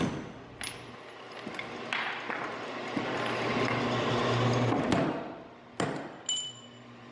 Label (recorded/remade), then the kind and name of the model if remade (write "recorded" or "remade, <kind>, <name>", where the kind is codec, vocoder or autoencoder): recorded